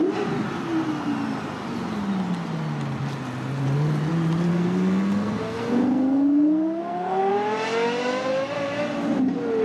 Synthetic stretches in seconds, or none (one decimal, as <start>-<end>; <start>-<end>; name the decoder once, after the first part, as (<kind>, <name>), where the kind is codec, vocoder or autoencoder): 4.5-7.3 (codec, SNAC)